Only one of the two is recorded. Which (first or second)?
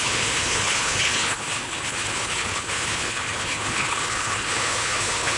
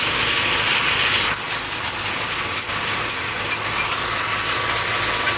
second